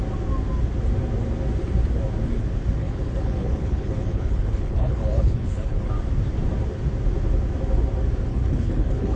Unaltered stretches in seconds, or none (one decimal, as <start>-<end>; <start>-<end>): 0.0-2.8; 5.9-8.3

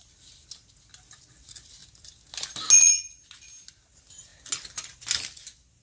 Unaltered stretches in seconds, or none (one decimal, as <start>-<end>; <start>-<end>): 0.0-5.8

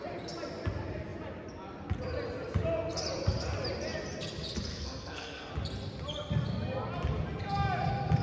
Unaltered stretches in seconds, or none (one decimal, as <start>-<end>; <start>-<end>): 0.0-4.7; 5.5-8.2